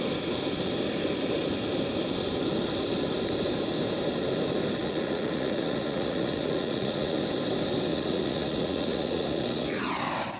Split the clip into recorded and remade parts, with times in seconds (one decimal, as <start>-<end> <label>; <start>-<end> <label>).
0.0-4.8 recorded; 4.8-7.2 remade; 7.2-7.9 recorded; 7.9-9.9 remade; 9.9-10.4 recorded